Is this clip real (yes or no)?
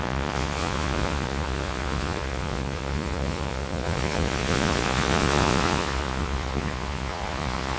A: no